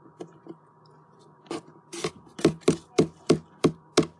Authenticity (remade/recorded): recorded